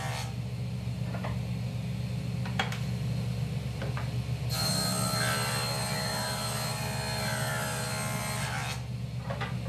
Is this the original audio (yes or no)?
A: yes